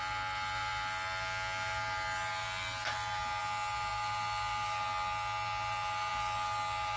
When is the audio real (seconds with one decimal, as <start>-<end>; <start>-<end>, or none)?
0.0-7.0